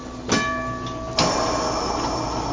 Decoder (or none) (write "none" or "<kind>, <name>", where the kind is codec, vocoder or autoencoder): none